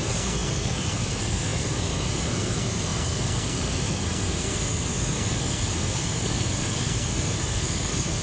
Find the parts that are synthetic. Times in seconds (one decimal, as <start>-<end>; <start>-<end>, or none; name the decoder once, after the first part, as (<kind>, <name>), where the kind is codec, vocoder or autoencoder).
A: 0.0-8.2 (codec, SNAC)